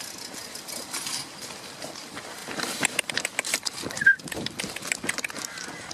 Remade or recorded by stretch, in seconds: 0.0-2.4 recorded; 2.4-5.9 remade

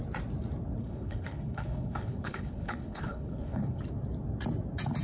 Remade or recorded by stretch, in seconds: 0.0-0.8 recorded; 0.8-3.8 remade; 3.8-5.0 recorded

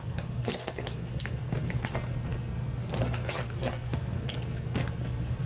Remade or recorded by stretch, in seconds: 0.0-5.5 remade

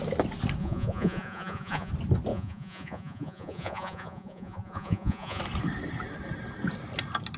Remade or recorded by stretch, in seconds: 0.0-0.6 recorded; 0.6-1.9 remade; 1.9-2.3 recorded; 2.3-5.4 remade; 5.4-7.4 recorded

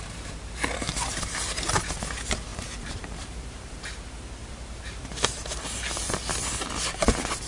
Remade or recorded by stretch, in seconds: 0.0-2.5 recorded; 2.5-4.0 remade; 4.0-4.4 recorded; 4.4-5.0 remade; 5.0-7.5 recorded